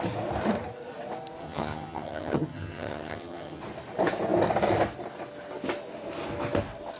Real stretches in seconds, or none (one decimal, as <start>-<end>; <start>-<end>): 0.0-1.4; 3.6-7.0